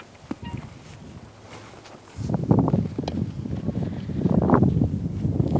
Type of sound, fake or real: real